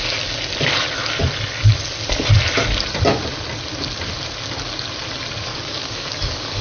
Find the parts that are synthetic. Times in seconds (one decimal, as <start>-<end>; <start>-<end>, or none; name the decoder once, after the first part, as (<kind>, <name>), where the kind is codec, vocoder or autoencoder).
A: 5.5-6.6 (codec, DAC)